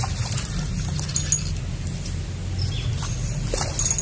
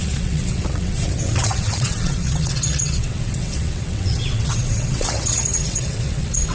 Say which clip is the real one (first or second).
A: first